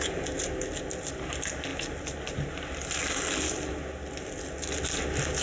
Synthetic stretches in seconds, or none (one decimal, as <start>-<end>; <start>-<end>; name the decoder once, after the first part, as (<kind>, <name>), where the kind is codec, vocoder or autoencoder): none